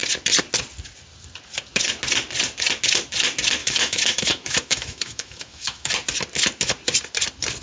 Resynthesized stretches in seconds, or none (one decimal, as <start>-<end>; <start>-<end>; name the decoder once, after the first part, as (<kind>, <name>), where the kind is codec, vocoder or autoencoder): 3.6-5.9 (autoencoder, DAC-VAE)